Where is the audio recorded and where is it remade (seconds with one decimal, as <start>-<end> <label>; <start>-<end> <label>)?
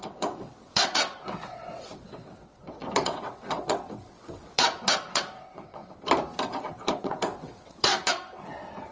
0.0-5.8 remade; 5.8-6.9 recorded; 6.9-7.9 remade; 7.9-8.9 recorded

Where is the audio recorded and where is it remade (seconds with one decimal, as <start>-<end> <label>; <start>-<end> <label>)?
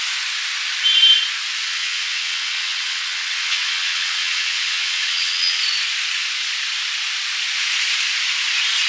0.0-1.6 recorded; 1.6-5.6 remade; 5.6-8.9 recorded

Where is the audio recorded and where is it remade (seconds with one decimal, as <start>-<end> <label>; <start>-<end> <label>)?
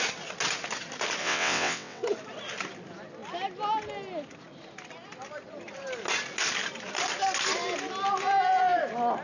0.0-1.2 recorded; 1.2-2.0 remade; 2.0-9.2 recorded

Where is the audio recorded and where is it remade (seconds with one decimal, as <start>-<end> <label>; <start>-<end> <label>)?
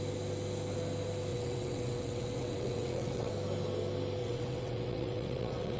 0.0-1.3 recorded; 1.3-3.3 remade; 3.3-4.2 recorded; 4.2-5.8 remade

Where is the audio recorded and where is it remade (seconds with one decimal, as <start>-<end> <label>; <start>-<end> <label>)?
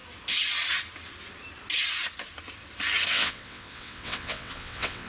0.0-3.1 recorded; 3.1-5.1 remade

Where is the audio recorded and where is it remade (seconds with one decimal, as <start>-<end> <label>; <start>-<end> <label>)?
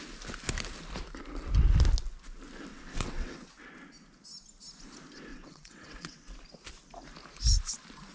0.0-2.7 recorded; 2.7-3.5 remade; 3.5-5.3 recorded; 5.3-6.3 remade; 6.3-8.1 recorded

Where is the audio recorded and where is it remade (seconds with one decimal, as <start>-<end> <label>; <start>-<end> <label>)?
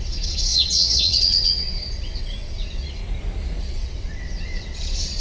0.0-3.0 remade; 3.0-3.6 recorded; 3.6-5.2 remade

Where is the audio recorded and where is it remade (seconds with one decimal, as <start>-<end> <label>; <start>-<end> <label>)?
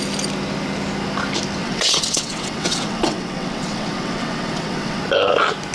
0.0-1.6 recorded; 1.6-5.0 remade; 5.0-5.7 recorded